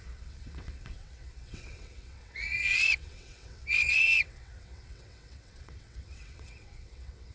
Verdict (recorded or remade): remade